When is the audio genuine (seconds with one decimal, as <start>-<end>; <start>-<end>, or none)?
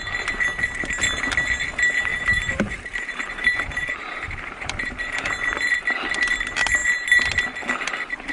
0.0-2.1; 5.3-8.3